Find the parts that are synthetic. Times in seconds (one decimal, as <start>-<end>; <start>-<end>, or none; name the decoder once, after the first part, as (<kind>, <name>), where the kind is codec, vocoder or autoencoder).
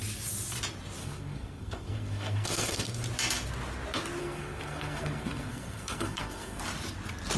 1.0-3.0 (codec, SNAC); 4.2-6.6